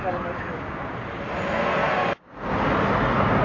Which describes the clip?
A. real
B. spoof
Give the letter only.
A